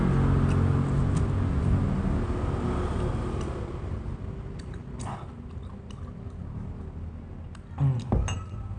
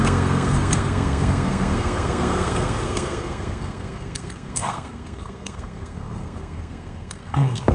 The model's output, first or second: second